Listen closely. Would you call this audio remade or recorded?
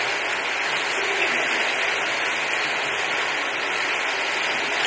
recorded